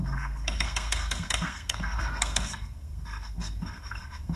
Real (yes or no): no